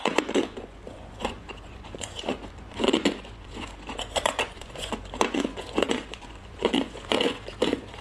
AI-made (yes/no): yes